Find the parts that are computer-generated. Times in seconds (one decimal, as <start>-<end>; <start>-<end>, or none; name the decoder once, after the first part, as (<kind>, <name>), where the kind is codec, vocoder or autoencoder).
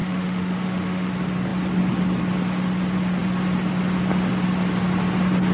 0.0-1.1 (autoencoder, DAC-VAE)